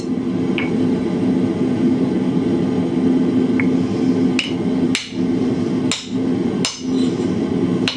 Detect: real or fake real